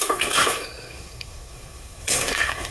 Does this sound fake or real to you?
fake